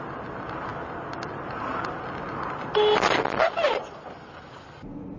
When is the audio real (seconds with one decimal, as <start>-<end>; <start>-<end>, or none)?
0.0-5.2